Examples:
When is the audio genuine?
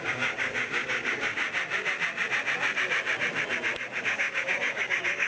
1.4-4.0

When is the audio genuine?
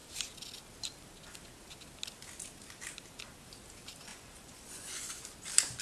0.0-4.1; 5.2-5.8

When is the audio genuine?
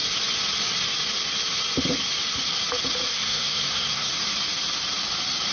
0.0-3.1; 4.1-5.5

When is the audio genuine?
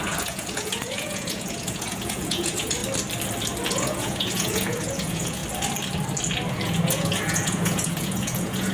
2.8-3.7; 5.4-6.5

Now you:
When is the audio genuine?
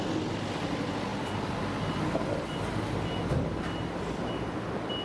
0.0-5.0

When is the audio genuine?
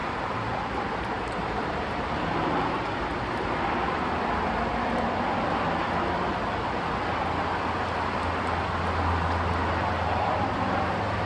3.0-11.3